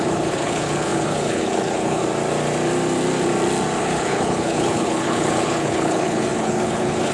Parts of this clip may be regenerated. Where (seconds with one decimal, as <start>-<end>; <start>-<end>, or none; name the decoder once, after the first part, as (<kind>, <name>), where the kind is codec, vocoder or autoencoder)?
0.0-2.0 (codec, HILCodec); 3.8-7.1